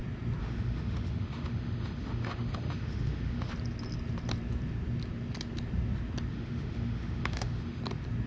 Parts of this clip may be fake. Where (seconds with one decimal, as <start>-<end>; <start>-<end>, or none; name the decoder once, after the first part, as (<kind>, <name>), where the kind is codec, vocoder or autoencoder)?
0.4-3.5 (autoencoder, DAC-VAE); 6.3-7.8